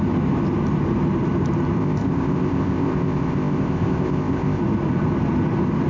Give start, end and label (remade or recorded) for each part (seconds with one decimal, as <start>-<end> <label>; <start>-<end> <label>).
0.0-1.8 recorded; 1.8-4.6 remade; 4.6-5.9 recorded